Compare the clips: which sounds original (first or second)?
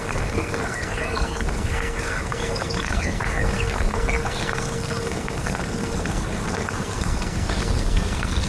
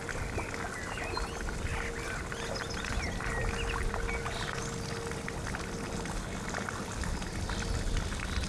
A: second